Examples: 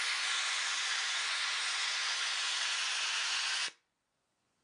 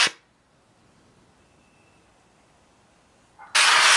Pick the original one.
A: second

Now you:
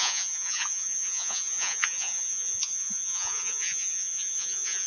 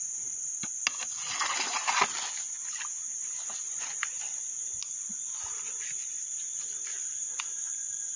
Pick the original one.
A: second